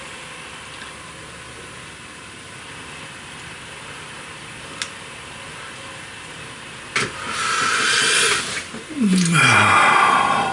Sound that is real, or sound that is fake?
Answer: real